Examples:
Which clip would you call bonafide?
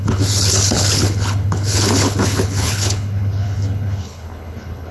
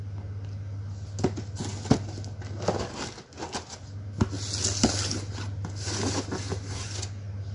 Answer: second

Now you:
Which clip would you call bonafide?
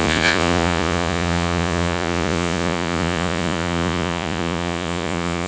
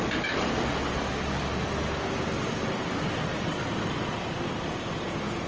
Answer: second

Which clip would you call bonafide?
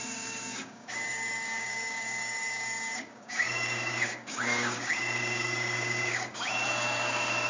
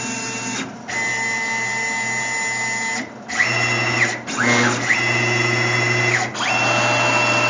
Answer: second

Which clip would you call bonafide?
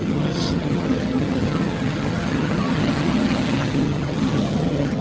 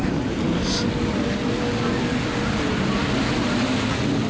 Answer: second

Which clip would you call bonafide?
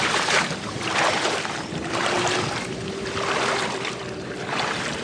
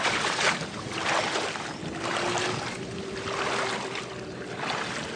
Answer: second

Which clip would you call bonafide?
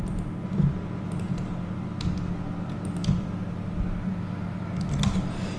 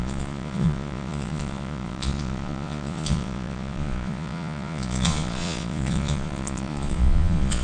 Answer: first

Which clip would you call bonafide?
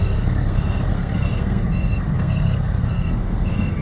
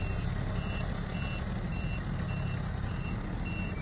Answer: second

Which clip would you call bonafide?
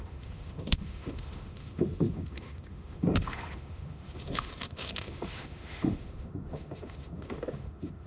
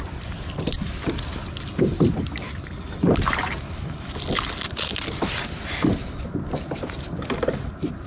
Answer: second